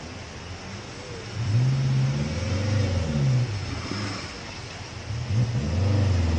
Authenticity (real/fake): real